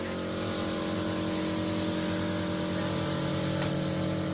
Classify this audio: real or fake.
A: real